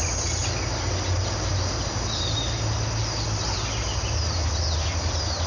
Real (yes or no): yes